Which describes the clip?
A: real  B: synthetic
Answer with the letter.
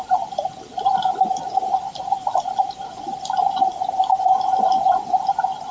A